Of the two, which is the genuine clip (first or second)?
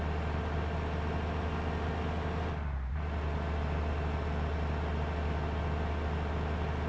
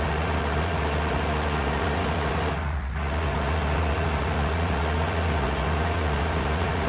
first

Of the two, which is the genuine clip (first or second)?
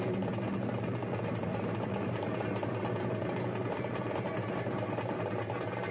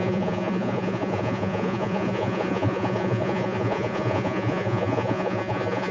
first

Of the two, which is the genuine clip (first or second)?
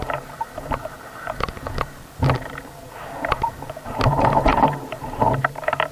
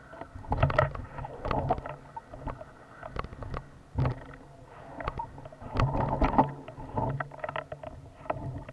second